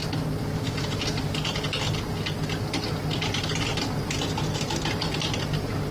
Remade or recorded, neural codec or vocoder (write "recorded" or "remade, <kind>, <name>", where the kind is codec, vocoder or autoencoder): recorded